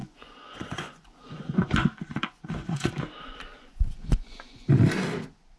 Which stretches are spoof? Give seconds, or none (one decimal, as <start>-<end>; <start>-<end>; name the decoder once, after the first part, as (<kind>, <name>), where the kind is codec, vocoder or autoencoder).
0.0-2.9 (vocoder, Vocos); 3.5-4.7